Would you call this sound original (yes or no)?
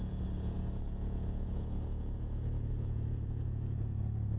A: no